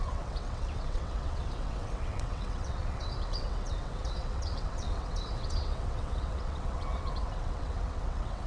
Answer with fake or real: fake